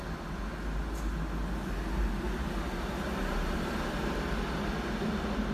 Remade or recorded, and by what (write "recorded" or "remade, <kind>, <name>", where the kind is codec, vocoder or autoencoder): recorded